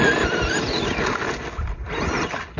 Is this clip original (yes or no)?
yes